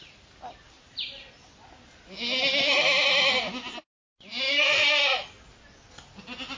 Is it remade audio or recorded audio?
recorded